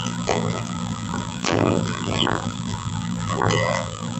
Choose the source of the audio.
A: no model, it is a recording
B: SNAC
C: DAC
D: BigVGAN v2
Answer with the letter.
D